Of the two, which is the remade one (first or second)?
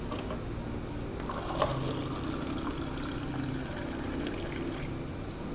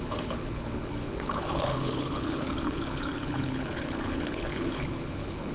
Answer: second